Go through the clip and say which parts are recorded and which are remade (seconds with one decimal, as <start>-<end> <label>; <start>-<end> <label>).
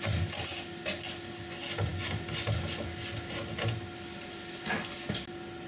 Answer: 0.0-5.7 recorded